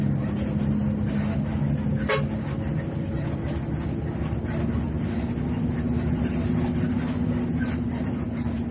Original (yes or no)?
yes